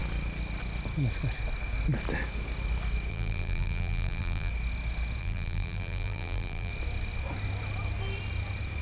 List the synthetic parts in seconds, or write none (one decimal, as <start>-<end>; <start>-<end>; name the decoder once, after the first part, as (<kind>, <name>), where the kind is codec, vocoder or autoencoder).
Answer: 3.1-4.5 (vocoder, BigVGAN v2); 5.2-6.7